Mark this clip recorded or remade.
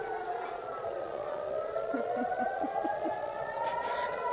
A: remade